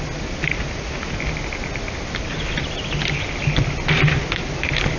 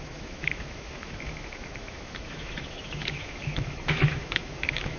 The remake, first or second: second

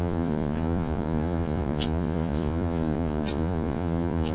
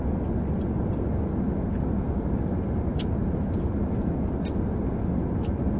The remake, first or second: first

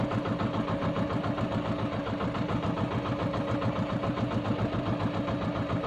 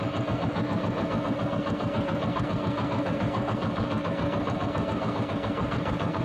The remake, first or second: second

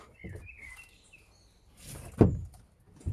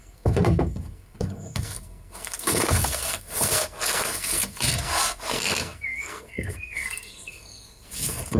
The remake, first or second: second